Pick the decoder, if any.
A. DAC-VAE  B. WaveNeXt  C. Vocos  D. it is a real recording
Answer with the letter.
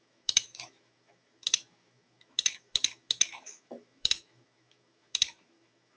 A